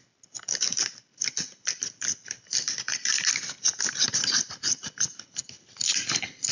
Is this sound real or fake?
real